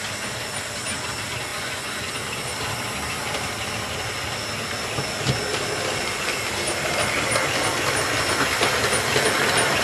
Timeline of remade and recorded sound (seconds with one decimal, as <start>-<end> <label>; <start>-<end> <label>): 0.0-1.5 recorded; 1.5-2.1 remade; 2.1-9.8 recorded